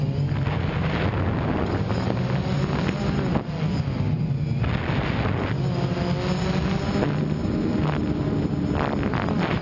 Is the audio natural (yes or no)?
yes